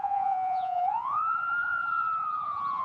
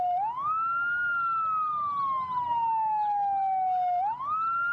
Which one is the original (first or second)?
second